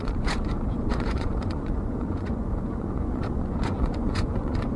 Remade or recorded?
remade